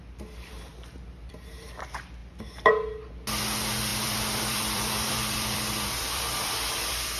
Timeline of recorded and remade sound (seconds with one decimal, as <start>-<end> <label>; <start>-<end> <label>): 0.0-3.9 recorded; 3.9-6.2 remade; 6.2-7.2 recorded